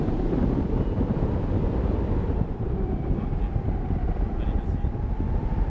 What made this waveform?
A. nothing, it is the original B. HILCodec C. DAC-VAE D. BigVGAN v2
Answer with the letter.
A